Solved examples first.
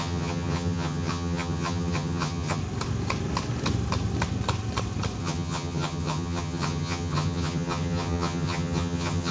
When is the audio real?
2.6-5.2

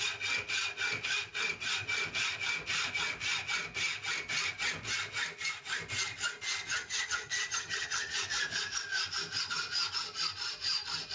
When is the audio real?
0.0-6.7; 8.2-11.1

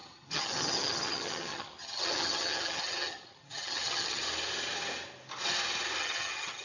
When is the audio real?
4.2-6.0

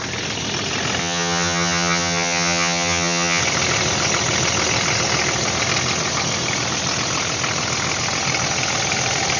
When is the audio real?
0.0-1.0; 3.4-9.4

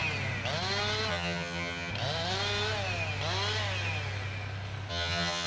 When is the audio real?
0.0-1.1; 1.9-4.9

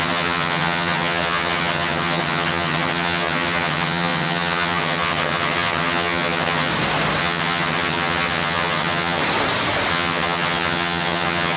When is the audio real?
6.7-7.2; 9.2-9.9

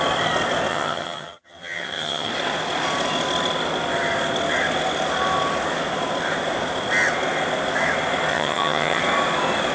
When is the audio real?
0.0-0.7; 2.3-8.3; 9.0-9.7